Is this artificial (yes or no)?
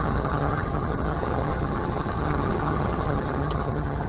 yes